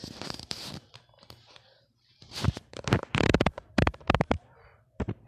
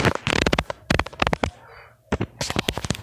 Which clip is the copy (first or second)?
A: first